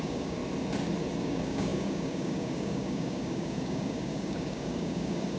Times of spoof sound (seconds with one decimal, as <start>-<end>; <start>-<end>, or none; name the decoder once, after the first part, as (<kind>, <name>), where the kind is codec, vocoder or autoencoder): 0.0-0.4 (codec, DAC); 1.2-5.4